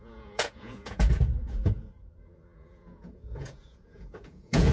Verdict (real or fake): fake